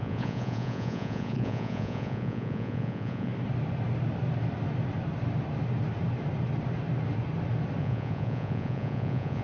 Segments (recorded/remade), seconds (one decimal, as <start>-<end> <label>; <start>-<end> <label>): 0.0-3.3 remade; 3.3-7.8 recorded; 7.8-9.4 remade